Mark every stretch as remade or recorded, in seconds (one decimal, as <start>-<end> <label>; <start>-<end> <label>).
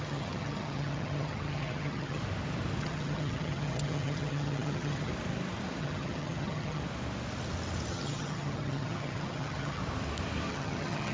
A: 0.0-2.2 remade; 2.2-2.8 recorded; 2.8-5.1 remade; 5.1-5.8 recorded; 5.8-6.8 remade; 6.8-7.9 recorded; 7.9-9.8 remade; 9.8-10.5 recorded; 10.5-11.1 remade